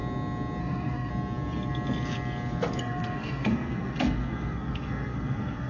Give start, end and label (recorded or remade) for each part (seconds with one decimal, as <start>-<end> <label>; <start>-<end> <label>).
0.0-0.6 recorded; 0.6-1.1 remade; 1.1-2.8 recorded; 2.8-5.7 remade